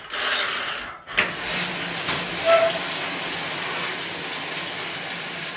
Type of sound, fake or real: real